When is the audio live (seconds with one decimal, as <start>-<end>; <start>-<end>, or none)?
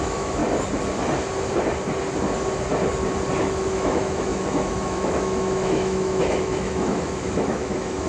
0.4-3.4